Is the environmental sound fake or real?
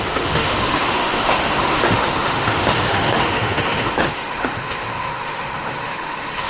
fake